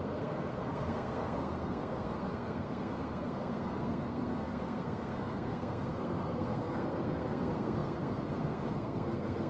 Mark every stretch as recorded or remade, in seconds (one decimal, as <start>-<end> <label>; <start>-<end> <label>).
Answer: 0.0-9.5 remade